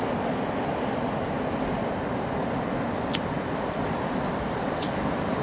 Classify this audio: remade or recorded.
recorded